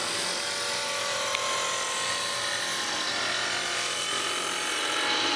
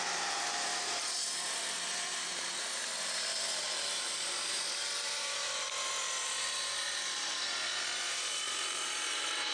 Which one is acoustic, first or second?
first